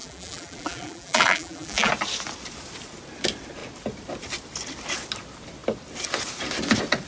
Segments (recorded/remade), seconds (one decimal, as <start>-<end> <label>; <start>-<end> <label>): 0.0-1.9 remade; 1.9-7.1 recorded